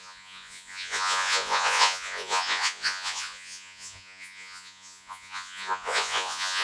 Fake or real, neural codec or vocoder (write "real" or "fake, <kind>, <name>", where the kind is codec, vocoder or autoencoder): fake, vocoder, Vocos